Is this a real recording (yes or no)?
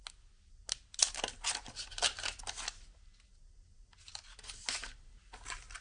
yes